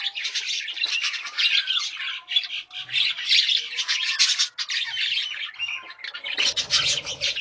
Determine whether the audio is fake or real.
real